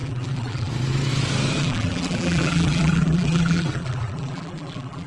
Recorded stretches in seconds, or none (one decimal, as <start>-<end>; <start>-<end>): 0.7-1.6